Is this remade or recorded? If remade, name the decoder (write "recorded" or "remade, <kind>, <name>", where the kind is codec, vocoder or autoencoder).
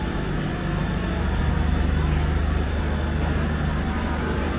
recorded